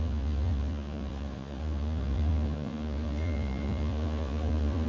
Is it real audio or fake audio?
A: fake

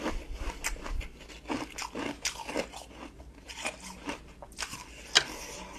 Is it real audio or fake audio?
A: real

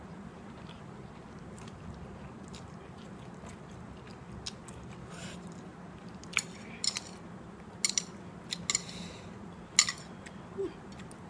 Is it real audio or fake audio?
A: real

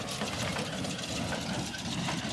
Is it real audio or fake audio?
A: real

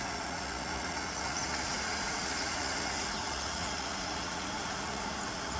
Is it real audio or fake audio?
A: fake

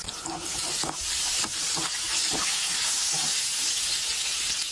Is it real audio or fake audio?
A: real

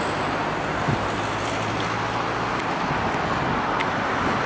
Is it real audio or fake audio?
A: real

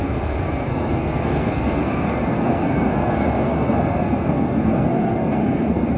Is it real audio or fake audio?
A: fake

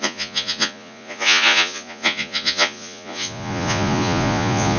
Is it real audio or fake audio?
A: fake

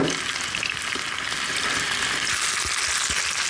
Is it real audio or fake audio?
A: real